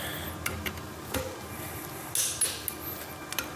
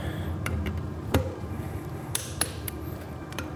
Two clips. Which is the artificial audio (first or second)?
second